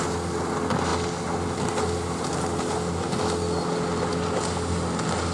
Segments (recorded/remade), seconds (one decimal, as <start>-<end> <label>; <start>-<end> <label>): 0.0-5.3 recorded